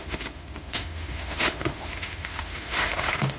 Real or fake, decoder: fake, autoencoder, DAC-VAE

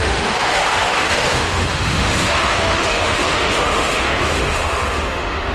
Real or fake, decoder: fake, autoencoder, DAC-VAE